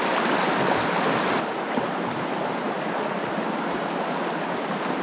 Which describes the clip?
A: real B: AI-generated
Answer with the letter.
A